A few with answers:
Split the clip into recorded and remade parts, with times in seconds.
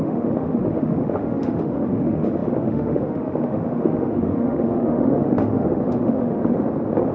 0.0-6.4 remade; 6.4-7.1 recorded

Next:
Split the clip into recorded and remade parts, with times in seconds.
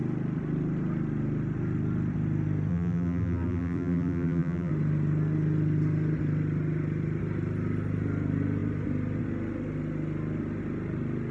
0.0-2.7 recorded; 2.7-4.7 remade; 4.7-11.3 recorded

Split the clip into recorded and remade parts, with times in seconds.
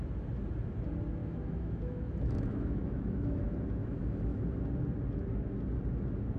0.0-1.2 recorded; 1.2-3.4 remade; 3.4-3.8 recorded; 3.8-4.4 remade; 4.4-6.4 recorded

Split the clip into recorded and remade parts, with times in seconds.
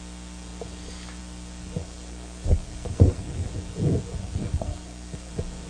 0.0-1.8 recorded; 1.8-3.5 remade; 3.5-4.2 recorded; 4.2-5.3 remade; 5.3-5.7 recorded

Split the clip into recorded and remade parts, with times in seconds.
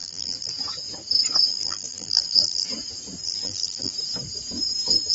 0.0-0.6 remade; 0.6-1.5 recorded; 1.5-2.7 remade; 2.7-3.2 recorded; 3.2-3.9 remade; 3.9-5.1 recorded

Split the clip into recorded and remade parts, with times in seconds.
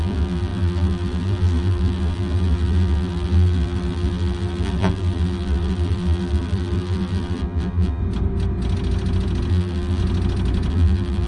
0.0-8.0 remade; 8.0-9.5 recorded; 9.5-10.0 remade; 10.0-10.7 recorded; 10.7-11.3 remade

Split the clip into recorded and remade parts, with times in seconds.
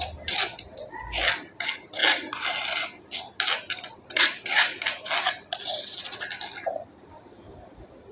0.0-8.1 recorded